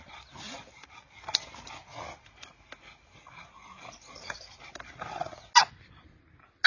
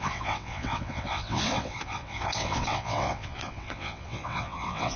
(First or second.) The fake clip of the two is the second